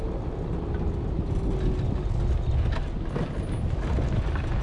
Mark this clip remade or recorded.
recorded